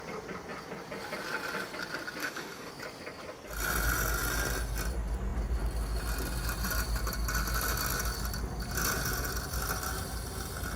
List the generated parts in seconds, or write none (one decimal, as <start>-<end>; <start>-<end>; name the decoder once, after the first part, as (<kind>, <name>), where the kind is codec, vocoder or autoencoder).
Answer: 2.2-2.7 (autoencoder, DAC-VAE)